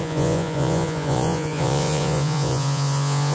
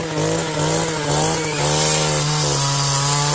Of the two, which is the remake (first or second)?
first